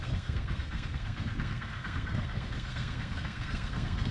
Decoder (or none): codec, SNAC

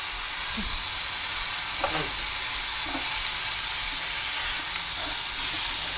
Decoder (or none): none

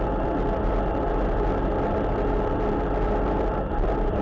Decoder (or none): none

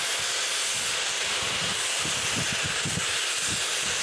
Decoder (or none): none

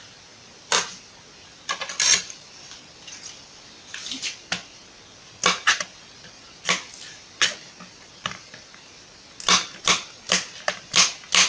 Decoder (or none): none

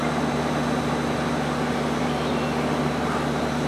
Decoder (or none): none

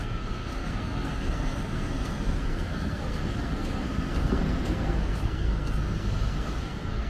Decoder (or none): codec, SNAC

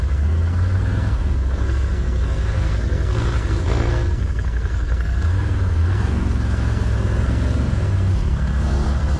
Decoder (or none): codec, SNAC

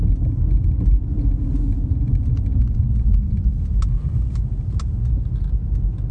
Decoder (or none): none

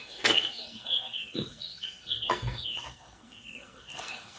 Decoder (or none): codec, SNAC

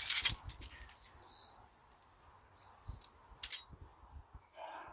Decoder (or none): none